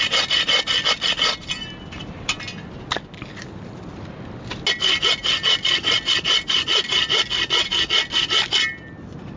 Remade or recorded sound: recorded